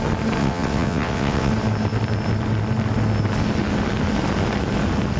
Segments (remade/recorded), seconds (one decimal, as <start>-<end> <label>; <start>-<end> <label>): 0.0-0.4 recorded; 0.4-1.5 remade; 1.5-5.2 recorded